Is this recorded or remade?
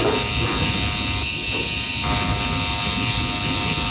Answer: recorded